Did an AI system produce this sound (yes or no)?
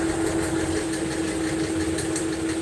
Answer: no